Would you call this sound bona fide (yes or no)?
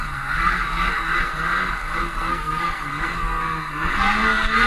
no